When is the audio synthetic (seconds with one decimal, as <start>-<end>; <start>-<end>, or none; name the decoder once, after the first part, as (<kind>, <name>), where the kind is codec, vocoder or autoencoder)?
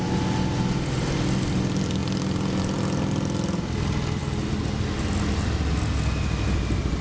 none